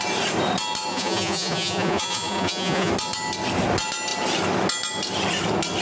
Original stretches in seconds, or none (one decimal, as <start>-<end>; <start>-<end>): 0.0-0.9; 2.9-5.8